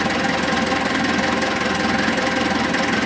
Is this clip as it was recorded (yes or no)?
yes